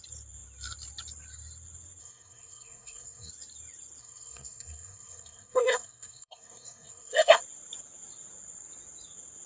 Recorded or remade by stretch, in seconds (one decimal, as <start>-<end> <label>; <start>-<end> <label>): 0.0-2.0 recorded; 2.0-3.3 remade; 3.3-4.0 recorded; 4.0-7.4 remade; 7.4-9.5 recorded